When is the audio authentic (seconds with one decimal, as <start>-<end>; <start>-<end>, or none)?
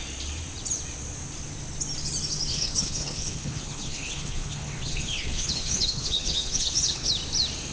0.0-2.5; 7.1-7.7